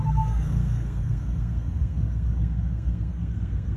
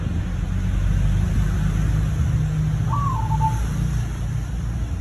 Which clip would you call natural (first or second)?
second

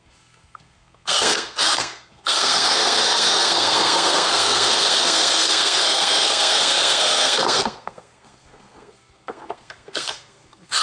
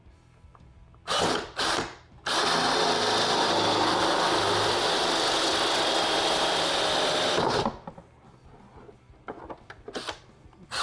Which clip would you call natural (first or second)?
second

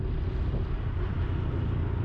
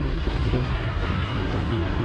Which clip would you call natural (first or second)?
first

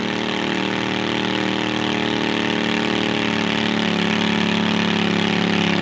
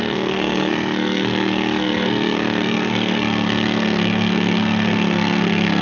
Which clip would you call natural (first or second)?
first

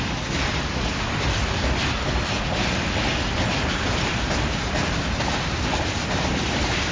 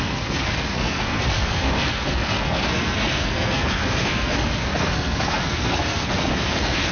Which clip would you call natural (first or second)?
first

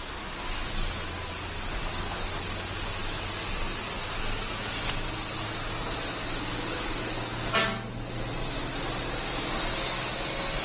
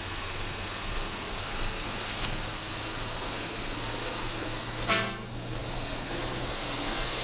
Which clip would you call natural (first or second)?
first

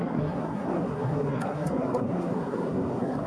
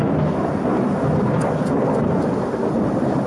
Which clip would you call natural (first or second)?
second